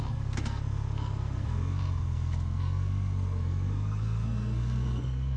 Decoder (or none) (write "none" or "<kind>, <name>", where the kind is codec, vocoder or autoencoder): codec, SNAC